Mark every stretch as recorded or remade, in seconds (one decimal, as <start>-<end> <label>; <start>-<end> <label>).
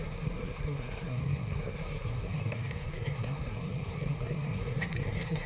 0.0-5.5 remade